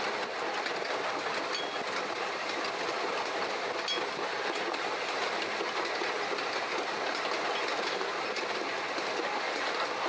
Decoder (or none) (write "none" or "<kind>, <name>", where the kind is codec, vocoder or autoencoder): none